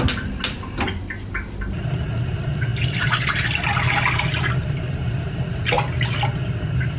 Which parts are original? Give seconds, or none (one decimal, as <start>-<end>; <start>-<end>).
0.0-7.0